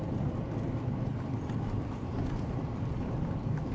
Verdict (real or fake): fake